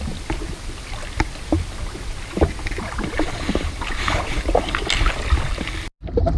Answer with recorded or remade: recorded